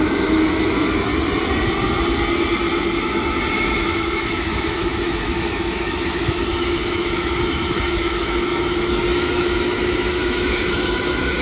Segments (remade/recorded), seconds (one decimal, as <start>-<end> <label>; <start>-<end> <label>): 0.0-1.1 remade; 1.1-3.5 recorded; 3.5-11.4 remade